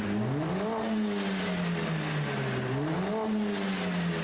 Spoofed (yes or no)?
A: no